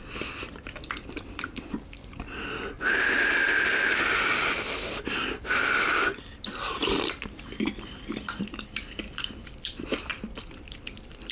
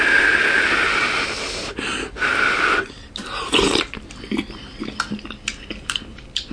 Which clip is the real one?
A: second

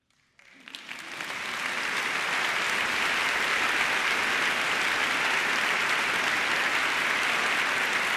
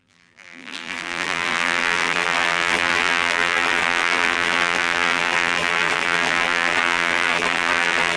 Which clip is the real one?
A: first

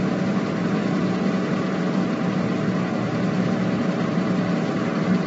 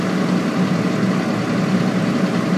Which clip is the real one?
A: first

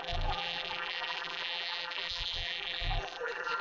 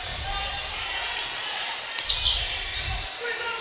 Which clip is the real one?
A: second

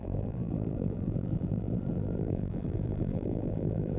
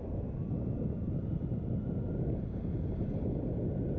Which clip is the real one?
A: second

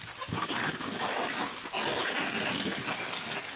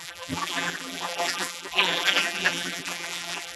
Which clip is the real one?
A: first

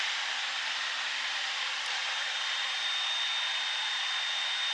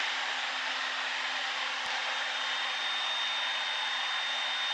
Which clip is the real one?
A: second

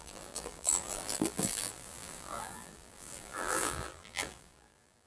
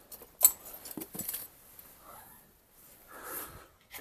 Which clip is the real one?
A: second